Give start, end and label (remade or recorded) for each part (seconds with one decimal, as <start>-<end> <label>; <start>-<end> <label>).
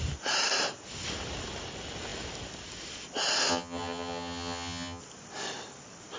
0.0-3.5 recorded; 3.5-5.0 remade; 5.0-6.2 recorded